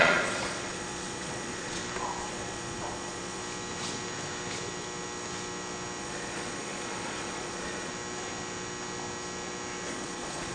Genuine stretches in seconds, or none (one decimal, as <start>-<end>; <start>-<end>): 1.8-2.3; 3.4-6.0; 7.9-9.9